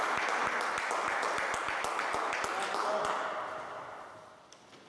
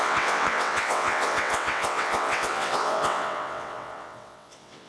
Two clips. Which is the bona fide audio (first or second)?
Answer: first